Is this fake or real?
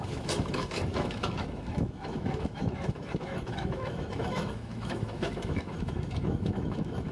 fake